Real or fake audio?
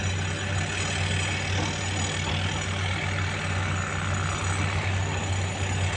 real